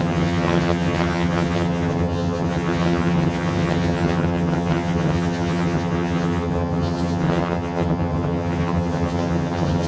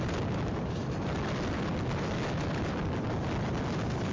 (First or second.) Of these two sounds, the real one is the second